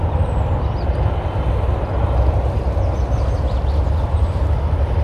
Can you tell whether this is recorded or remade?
recorded